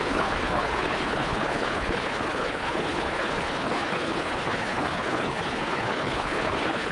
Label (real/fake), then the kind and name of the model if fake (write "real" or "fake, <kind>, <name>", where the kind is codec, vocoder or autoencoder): fake, codec, HILCodec